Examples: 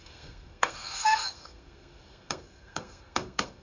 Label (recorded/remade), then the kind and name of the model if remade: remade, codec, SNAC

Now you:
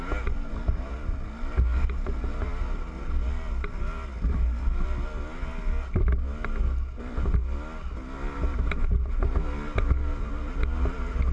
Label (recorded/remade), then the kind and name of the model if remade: recorded